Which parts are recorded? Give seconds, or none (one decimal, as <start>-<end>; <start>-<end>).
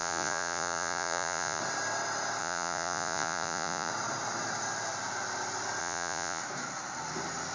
1.6-2.4; 3.9-5.8; 6.4-7.5